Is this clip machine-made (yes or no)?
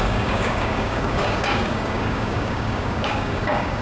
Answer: yes